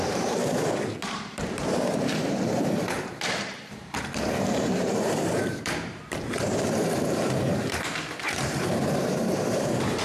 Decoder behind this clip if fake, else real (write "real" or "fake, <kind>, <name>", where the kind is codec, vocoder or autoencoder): fake, vocoder, BigVGAN v2